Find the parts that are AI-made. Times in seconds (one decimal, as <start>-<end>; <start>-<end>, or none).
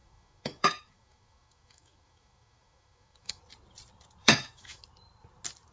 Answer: 0.0-3.4; 4.2-4.8